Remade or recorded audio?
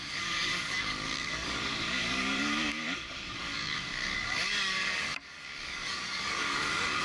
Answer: remade